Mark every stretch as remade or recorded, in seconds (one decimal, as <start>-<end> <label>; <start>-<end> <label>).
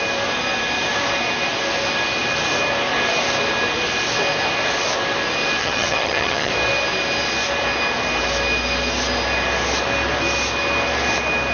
0.0-5.6 recorded; 5.6-6.5 remade; 6.5-11.5 recorded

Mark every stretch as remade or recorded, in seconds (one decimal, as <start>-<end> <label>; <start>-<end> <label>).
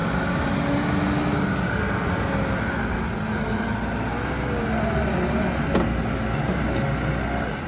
0.0-7.7 recorded